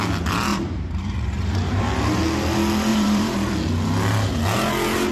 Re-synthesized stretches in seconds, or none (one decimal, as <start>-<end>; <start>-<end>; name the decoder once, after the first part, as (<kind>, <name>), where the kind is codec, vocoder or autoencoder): 0.5-1.8 (vocoder, BigVGAN v2); 2.9-3.5